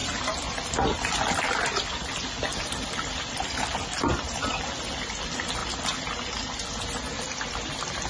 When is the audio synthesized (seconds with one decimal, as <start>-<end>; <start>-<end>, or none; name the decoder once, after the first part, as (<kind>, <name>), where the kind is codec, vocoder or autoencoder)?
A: 0.7-5.6 (vocoder, BigVGAN v2); 7.5-8.1